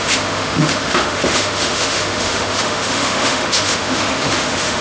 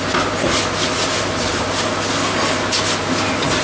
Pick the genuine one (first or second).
second